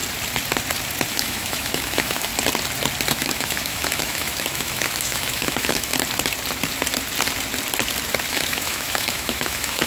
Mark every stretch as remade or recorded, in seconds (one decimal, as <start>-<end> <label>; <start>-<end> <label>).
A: 0.0-1.1 recorded; 1.1-2.3 remade; 2.3-3.1 recorded; 3.1-5.9 remade; 5.9-8.3 recorded; 8.3-9.9 remade